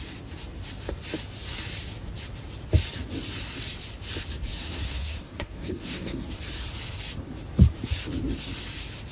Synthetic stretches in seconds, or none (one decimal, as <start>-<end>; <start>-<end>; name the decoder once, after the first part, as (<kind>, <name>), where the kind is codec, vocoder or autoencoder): 4.6-6.4 (codec, SNAC)

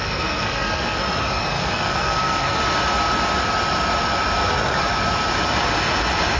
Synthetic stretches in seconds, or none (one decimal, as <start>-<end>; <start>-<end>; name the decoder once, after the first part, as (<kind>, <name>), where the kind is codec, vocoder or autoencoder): 0.0-1.0 (codec, SNAC); 1.6-2.6